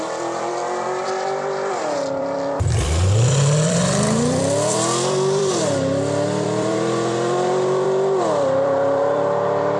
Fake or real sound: fake